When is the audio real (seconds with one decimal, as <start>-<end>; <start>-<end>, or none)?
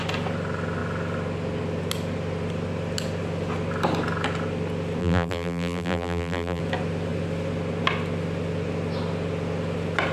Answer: 0.0-5.0; 6.6-10.1